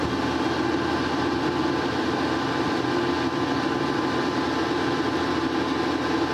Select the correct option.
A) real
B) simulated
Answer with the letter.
A